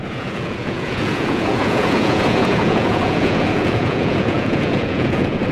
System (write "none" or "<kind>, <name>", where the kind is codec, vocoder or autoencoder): vocoder, Vocos